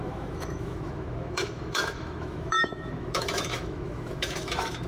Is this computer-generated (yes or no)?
yes